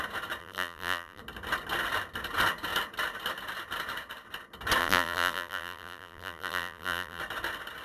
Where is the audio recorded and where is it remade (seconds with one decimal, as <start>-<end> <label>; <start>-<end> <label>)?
0.0-0.4 recorded; 0.4-1.2 remade; 1.2-4.8 recorded; 4.8-7.2 remade; 7.2-7.8 recorded